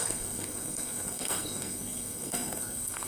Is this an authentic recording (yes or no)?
no